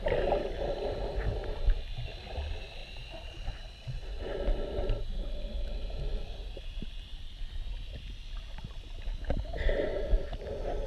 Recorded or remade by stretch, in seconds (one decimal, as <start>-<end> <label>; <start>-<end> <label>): 0.0-10.9 recorded